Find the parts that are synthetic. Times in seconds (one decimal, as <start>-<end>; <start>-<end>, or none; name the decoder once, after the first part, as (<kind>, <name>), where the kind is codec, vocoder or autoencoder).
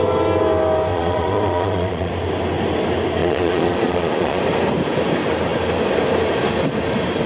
0.9-2.1 (vocoder, Vocos); 3.2-4.4